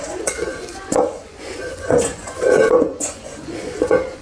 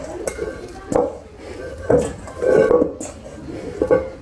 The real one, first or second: second